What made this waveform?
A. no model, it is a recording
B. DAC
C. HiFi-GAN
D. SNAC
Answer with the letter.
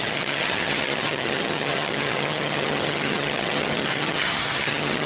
C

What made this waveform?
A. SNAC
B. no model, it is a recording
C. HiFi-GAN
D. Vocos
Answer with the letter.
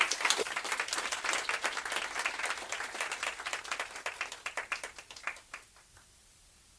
B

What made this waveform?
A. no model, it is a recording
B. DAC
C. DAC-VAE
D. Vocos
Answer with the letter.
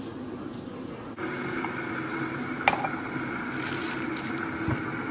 A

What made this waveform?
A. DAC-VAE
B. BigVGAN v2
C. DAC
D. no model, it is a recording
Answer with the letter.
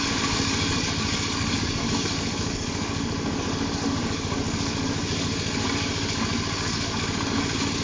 C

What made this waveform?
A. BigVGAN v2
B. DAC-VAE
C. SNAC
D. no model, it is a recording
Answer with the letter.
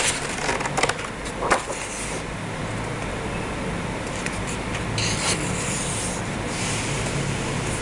D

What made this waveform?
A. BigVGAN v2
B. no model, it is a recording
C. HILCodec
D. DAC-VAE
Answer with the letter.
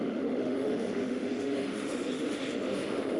D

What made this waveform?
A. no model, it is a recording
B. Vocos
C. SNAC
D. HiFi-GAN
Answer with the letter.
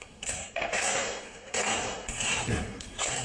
C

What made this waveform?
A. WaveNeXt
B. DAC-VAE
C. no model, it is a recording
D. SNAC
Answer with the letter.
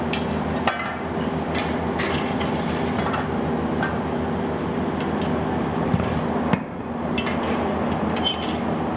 C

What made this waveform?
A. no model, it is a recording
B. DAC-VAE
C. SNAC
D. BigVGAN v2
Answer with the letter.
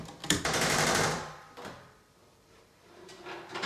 D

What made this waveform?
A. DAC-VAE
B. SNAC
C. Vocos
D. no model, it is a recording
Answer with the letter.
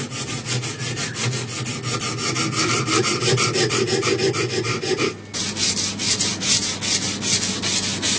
D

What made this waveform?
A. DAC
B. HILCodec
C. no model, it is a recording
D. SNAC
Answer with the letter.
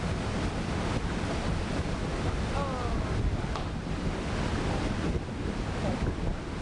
C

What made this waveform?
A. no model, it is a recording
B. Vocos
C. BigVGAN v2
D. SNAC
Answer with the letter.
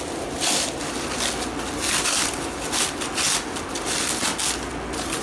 A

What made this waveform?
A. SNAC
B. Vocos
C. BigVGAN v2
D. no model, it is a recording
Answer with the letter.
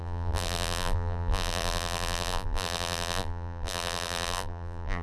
C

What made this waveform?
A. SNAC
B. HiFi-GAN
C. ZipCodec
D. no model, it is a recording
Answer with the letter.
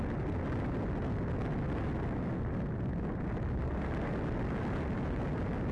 D